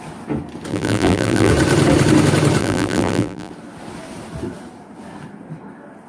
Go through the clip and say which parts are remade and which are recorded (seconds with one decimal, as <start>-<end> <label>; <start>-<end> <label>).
0.0-0.7 recorded; 0.7-1.5 remade; 1.5-2.6 recorded; 2.6-3.5 remade; 3.5-6.1 recorded

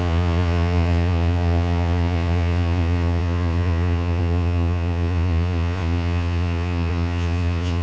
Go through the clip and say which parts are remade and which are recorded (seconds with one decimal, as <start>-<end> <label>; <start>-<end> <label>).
0.0-7.8 remade

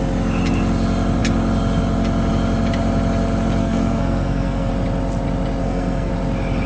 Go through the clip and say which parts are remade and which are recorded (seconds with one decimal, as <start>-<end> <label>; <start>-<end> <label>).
0.0-3.6 recorded; 3.6-4.7 remade; 4.7-5.6 recorded; 5.6-6.1 remade; 6.1-6.7 recorded

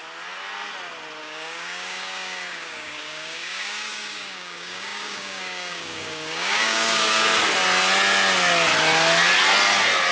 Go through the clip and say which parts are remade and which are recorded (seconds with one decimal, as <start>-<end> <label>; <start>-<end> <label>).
0.0-1.2 recorded; 1.2-7.3 remade; 7.3-10.1 recorded

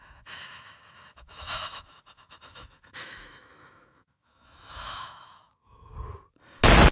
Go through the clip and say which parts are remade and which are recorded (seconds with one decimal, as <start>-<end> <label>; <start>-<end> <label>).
0.0-5.9 remade; 5.9-6.9 recorded